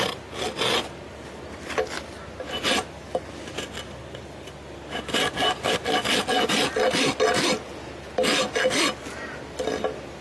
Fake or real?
real